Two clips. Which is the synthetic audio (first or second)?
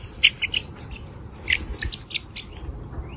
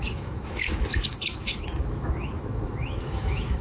second